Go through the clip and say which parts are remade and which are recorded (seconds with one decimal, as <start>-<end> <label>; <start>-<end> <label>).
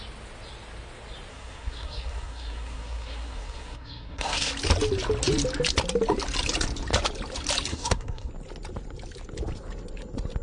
0.0-1.3 recorded; 1.3-4.5 remade; 4.5-7.7 recorded; 7.7-8.3 remade; 8.3-10.4 recorded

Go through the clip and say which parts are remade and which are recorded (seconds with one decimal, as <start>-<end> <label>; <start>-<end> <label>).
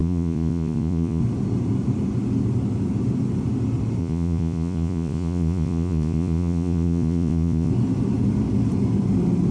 0.0-1.2 remade; 1.2-4.0 recorded; 4.0-7.7 remade; 7.7-9.5 recorded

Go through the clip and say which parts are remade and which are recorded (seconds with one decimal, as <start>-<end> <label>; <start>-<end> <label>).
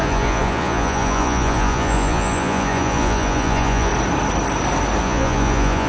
0.0-3.9 remade; 3.9-5.0 recorded; 5.0-5.9 remade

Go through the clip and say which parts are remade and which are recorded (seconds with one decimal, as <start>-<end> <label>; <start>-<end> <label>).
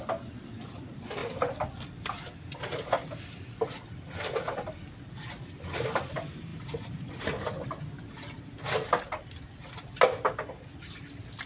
0.0-11.5 recorded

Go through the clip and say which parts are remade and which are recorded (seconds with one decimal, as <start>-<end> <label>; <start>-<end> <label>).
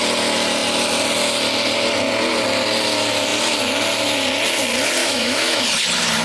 0.0-5.0 recorded; 5.0-5.6 remade; 5.6-6.2 recorded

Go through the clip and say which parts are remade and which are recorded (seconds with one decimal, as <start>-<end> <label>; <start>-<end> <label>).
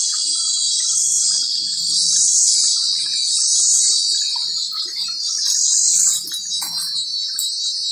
0.0-2.0 recorded; 2.0-3.8 remade; 3.8-4.3 recorded; 4.3-6.3 remade; 6.3-7.9 recorded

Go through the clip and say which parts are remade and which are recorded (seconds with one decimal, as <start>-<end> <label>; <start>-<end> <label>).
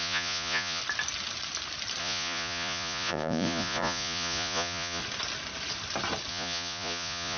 0.0-0.8 remade; 0.8-2.0 recorded; 2.0-5.0 remade; 5.0-6.3 recorded; 6.3-7.4 remade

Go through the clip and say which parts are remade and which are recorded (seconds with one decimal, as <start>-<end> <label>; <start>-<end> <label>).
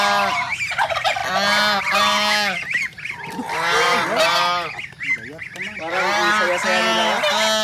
0.0-7.6 recorded